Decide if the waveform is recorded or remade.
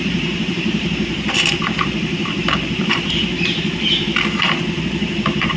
remade